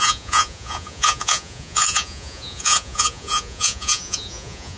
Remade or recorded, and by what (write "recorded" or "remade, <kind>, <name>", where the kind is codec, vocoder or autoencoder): remade, vocoder, Vocos